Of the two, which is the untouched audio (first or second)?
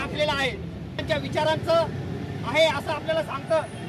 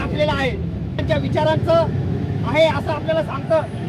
first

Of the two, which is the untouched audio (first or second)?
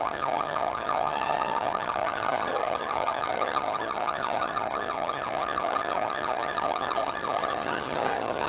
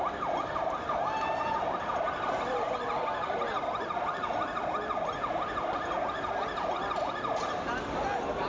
second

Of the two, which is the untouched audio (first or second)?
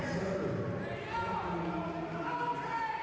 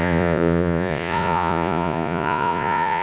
first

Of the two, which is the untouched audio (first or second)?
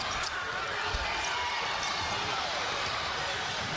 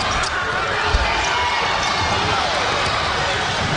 second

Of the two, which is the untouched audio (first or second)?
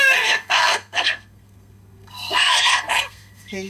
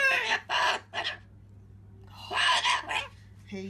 second